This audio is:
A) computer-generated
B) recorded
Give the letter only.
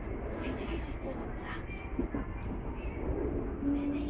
B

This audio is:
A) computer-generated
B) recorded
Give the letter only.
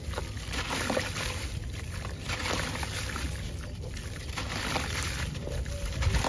B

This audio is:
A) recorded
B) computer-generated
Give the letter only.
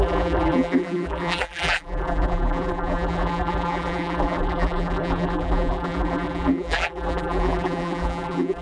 B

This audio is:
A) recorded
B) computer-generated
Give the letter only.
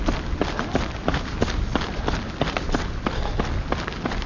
A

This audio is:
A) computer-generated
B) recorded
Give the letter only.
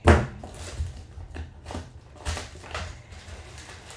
A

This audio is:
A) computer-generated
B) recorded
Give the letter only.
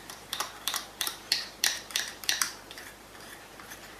A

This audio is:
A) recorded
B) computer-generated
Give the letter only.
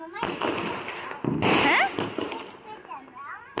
A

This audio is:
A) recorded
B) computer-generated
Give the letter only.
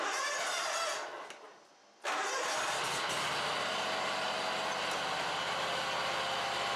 A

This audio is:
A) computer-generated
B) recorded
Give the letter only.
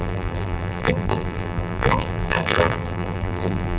A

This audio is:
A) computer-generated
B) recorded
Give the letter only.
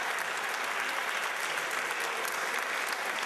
B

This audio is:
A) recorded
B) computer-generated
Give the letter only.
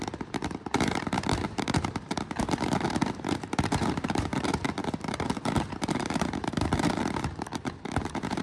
B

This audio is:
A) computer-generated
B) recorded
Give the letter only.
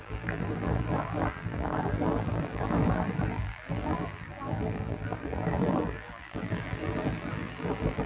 A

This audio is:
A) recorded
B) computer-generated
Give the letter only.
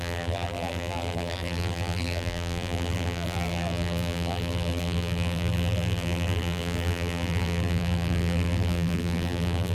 B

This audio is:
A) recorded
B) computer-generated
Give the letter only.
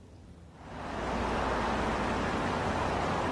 A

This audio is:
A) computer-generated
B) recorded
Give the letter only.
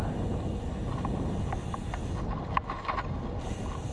B